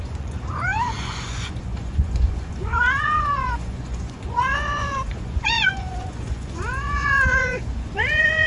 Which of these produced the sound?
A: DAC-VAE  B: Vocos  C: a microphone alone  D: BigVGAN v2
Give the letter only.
B